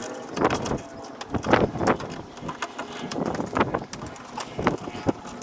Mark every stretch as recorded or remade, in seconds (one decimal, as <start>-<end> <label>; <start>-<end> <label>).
0.0-5.4 recorded